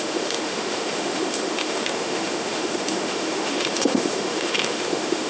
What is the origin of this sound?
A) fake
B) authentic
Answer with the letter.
A